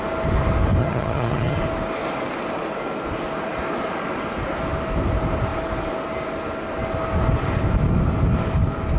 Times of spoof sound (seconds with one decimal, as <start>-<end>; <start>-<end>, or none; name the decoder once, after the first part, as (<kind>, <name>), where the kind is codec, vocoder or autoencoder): 0.8-1.6 (vocoder, HiFi-GAN)